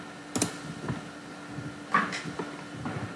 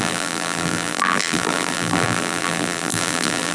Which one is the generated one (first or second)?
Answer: second